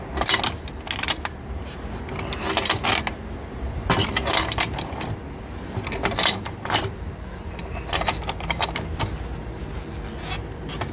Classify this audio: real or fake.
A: real